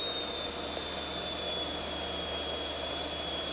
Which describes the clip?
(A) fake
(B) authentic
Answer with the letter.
B